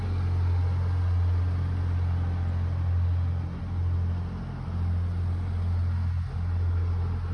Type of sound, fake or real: real